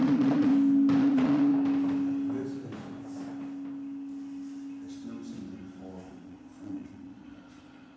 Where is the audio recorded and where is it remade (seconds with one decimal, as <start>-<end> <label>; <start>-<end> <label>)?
0.0-0.5 remade; 0.5-1.0 recorded; 1.0-1.5 remade; 1.5-6.1 recorded; 6.1-8.0 remade